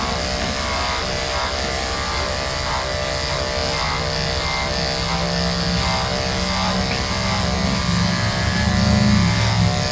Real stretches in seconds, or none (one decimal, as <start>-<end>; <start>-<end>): 0.0-9.9